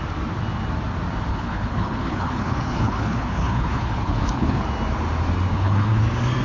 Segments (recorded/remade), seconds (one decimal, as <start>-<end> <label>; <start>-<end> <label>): 0.0-1.3 recorded; 1.3-4.6 remade; 4.6-5.5 recorded; 5.5-6.0 remade; 6.0-6.4 recorded